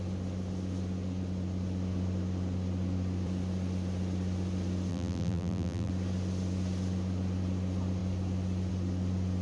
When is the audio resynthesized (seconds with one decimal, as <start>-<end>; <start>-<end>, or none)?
4.9-5.9